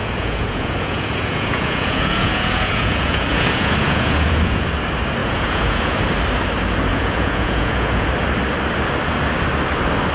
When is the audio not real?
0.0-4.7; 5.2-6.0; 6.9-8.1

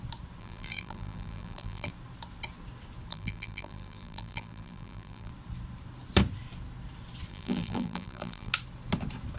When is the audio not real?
0.4-1.9; 3.1-5.3; 7.3-8.5